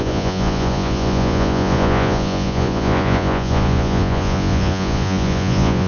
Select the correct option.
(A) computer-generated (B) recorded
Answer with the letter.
A